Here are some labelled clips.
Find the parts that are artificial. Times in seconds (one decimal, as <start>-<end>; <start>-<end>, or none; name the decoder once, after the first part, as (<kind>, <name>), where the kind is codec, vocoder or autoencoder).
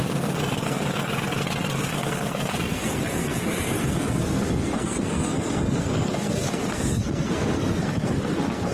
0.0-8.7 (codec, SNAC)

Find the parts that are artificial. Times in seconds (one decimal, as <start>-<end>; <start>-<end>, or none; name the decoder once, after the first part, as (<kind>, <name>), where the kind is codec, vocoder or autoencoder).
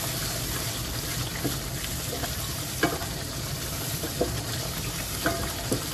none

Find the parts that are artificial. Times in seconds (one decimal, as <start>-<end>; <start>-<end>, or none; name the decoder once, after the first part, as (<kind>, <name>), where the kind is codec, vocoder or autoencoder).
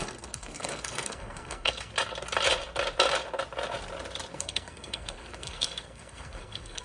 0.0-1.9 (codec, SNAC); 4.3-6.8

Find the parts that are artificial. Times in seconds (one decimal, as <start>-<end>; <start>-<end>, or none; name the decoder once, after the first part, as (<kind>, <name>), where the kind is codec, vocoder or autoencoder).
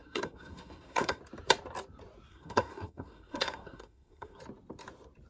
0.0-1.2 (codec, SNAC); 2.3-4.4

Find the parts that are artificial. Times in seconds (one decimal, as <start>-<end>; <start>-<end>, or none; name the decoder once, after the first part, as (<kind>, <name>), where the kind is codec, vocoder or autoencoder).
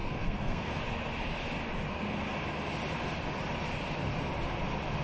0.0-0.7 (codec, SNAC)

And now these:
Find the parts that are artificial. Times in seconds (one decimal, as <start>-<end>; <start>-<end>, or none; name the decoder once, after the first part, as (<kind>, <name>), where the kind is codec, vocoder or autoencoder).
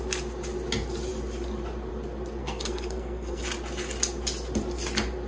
2.4-3.4 (codec, SNAC)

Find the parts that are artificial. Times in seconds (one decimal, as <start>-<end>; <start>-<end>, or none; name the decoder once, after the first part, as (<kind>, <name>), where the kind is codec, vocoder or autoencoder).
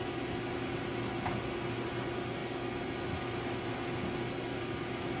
none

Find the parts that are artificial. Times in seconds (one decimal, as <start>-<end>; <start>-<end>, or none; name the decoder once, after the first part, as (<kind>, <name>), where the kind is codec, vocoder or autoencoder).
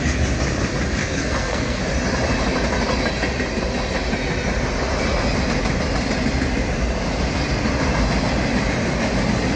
1.0-1.8 (codec, SNAC)